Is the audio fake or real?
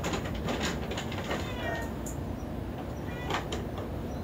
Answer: real